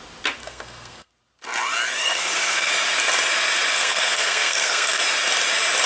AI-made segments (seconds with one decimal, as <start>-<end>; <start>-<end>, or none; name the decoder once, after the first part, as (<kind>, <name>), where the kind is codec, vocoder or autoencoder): 0.4-1.1 (codec, SNAC); 2.0-2.7; 3.7-5.0